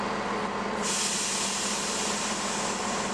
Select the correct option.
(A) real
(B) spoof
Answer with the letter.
A